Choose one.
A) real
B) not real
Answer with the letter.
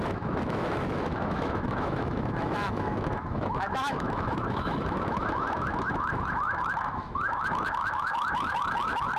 B